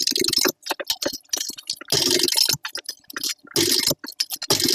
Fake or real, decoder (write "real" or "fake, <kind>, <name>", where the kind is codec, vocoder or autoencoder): real